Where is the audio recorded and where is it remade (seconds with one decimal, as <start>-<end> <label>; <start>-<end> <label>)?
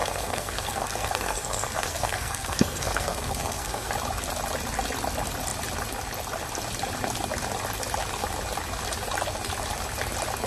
0.0-3.9 remade; 3.9-10.5 recorded